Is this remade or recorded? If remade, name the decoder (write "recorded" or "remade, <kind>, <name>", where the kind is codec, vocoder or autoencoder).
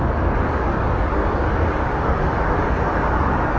remade, codec, DAC